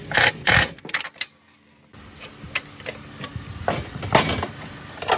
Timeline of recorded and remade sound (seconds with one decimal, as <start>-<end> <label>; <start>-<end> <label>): 0.0-5.2 recorded